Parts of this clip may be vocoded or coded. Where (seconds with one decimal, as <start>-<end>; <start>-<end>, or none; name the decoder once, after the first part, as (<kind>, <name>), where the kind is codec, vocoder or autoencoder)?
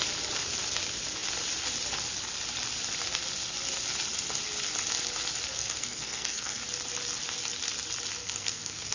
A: 5.5-6.6 (codec, SNAC); 8.2-8.9